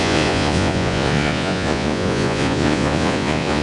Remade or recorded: remade